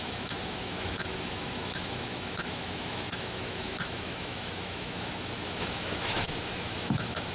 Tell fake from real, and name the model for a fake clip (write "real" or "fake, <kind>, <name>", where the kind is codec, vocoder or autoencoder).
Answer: fake, autoencoder, DAC-VAE